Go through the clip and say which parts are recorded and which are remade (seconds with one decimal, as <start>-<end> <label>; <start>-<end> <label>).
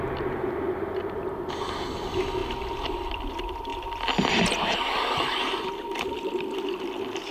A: 0.0-7.3 recorded